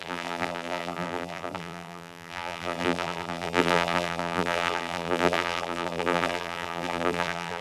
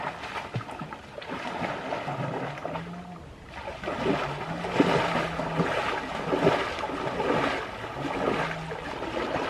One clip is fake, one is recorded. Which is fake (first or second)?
first